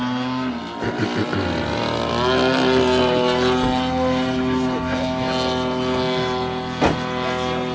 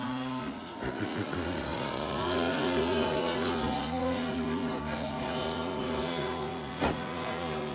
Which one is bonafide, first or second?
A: first